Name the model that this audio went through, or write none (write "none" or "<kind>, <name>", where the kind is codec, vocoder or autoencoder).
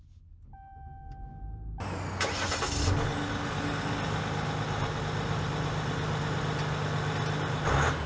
none